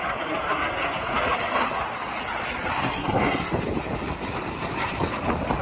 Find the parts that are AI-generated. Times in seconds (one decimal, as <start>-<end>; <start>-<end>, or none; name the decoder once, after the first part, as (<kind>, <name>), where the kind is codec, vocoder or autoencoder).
2.7-3.5 (codec, SNAC)